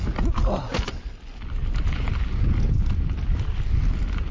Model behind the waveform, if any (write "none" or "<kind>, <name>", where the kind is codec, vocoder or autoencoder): none